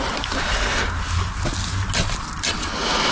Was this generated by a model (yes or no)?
no